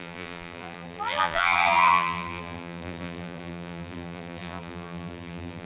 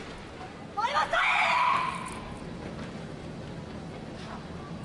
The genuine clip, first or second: second